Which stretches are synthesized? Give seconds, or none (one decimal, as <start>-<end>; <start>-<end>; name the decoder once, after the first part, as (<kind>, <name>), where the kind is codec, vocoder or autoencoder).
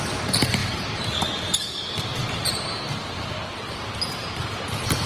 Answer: 0.0-5.1 (vocoder, BigVGAN v2)